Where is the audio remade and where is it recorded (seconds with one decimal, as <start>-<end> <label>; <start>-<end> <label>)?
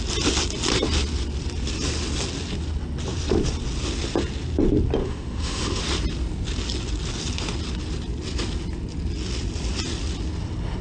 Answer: 0.0-5.0 recorded; 5.0-5.8 remade; 5.8-10.8 recorded